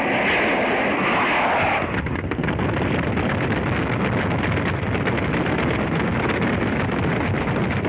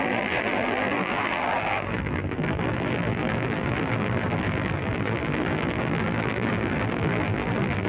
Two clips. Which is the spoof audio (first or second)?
second